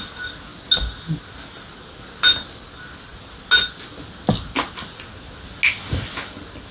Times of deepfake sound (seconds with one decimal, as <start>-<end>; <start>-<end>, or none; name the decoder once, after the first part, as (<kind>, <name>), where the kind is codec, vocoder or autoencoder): none